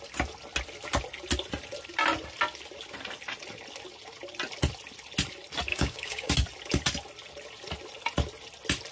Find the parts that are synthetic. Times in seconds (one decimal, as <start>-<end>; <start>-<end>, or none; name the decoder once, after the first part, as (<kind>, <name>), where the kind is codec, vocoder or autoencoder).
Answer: 5.7-6.3 (codec, DAC)